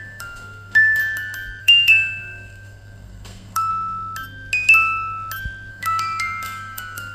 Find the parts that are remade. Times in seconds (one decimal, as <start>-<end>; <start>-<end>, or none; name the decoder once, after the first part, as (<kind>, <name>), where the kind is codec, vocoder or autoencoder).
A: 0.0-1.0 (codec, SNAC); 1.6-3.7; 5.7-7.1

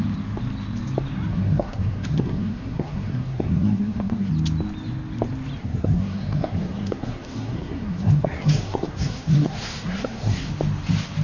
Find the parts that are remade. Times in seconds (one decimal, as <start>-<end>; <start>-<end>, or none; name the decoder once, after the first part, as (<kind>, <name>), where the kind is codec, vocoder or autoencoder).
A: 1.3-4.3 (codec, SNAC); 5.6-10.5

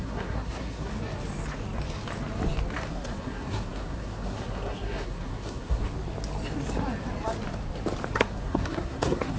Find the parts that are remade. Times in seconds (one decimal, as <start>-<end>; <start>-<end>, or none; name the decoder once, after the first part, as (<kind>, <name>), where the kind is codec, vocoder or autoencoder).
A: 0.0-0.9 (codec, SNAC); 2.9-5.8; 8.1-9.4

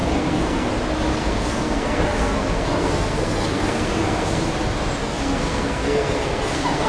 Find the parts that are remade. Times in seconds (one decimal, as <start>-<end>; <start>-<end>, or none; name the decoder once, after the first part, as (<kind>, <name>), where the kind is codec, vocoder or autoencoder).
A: 0.0-0.7 (codec, SNAC); 1.1-4.5; 5.0-6.9

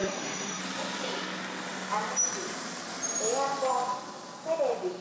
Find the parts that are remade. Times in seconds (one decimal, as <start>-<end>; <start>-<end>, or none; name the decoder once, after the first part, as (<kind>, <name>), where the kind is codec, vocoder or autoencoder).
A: 0.0-0.6 (codec, SNAC)